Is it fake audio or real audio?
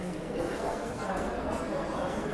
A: fake